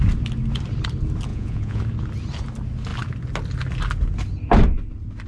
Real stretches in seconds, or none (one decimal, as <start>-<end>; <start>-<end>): 0.0-1.3; 1.8-5.3